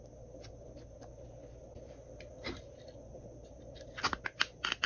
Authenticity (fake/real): real